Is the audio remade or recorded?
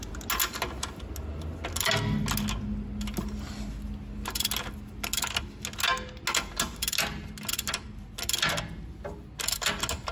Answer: recorded